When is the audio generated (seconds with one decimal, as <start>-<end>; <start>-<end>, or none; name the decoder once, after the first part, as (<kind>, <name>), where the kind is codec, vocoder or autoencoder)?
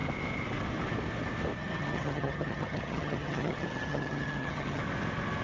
1.6-4.8 (vocoder, HiFi-GAN)